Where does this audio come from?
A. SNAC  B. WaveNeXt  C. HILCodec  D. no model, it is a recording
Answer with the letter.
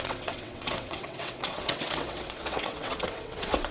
B